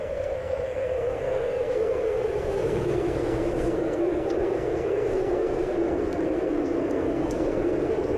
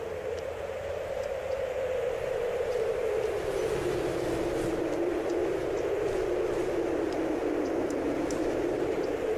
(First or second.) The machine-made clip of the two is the first